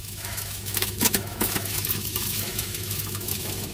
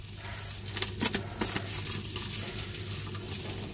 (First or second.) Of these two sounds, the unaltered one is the second